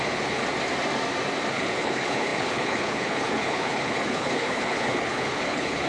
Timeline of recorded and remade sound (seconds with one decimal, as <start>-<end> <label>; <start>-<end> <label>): 0.0-0.4 remade; 0.4-1.5 recorded; 1.5-5.9 remade